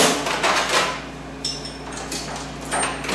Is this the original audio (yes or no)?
yes